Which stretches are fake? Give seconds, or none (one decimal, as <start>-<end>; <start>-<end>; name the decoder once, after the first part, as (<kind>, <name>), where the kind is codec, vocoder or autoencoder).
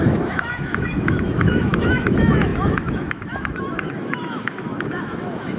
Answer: 0.0-5.6 (autoencoder, DAC-VAE)